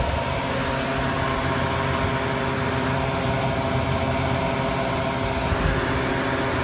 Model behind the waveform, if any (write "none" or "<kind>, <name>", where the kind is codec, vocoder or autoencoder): none